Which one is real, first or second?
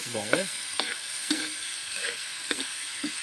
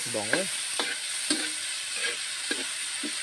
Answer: second